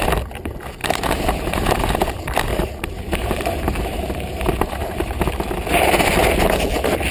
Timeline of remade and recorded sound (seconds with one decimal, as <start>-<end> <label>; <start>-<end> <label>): 0.0-0.8 recorded; 0.8-1.9 remade; 1.9-2.5 recorded; 2.5-5.2 remade; 5.2-7.1 recorded